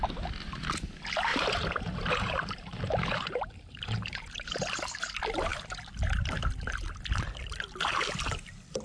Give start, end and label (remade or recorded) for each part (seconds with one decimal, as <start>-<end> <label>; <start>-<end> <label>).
0.0-1.3 recorded; 1.3-4.6 remade; 4.6-5.5 recorded; 5.5-6.1 remade; 6.1-8.8 recorded